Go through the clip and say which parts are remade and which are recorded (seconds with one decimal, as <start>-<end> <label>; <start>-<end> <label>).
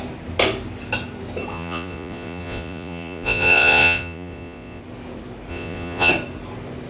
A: 0.0-1.5 recorded; 1.5-4.8 remade; 4.8-5.5 recorded; 5.5-6.1 remade; 6.1-6.9 recorded